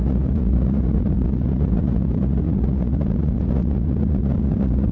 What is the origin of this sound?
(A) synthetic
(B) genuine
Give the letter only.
A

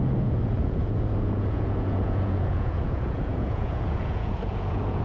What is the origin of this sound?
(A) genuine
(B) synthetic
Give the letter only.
B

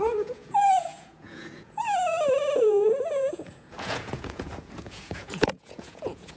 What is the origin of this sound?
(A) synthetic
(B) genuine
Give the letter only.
A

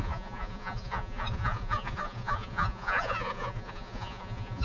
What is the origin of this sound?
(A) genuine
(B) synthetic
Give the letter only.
B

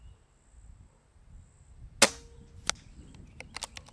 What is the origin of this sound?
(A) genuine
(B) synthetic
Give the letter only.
A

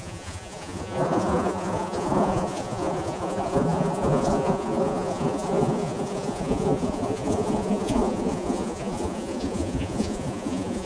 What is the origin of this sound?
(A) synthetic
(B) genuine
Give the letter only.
A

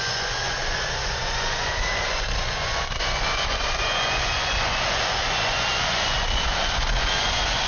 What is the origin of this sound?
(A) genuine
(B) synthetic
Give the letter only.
B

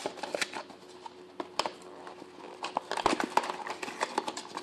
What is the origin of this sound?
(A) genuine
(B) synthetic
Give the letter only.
A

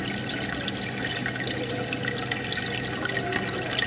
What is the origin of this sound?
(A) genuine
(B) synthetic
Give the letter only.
A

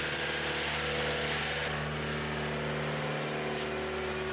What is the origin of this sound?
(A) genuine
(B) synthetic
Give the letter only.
A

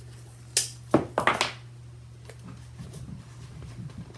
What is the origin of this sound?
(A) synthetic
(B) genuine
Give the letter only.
B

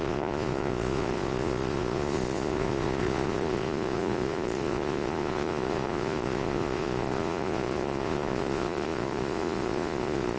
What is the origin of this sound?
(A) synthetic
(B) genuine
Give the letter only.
A